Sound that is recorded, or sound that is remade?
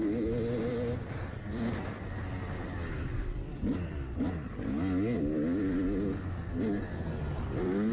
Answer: recorded